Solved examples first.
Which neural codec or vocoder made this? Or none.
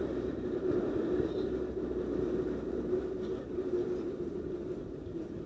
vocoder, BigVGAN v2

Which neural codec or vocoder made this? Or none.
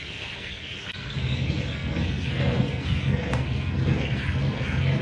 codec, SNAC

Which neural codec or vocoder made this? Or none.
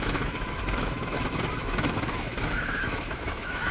autoencoder, DAC-VAE